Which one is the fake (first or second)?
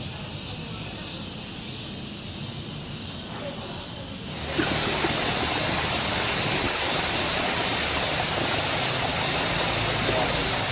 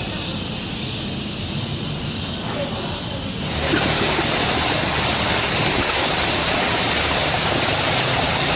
second